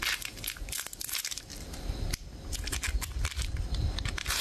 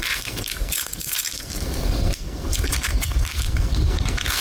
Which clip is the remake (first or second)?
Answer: second